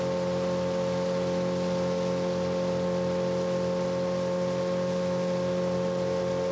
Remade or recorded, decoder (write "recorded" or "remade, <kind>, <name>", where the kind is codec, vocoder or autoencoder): recorded